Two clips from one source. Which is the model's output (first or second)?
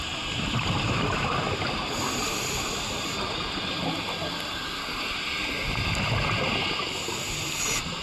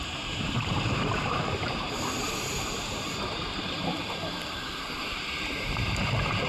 second